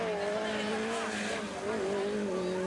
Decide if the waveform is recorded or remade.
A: recorded